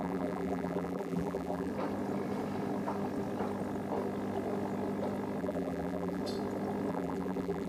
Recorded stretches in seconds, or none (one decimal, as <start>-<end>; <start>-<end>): 1.7-5.4; 6.2-6.9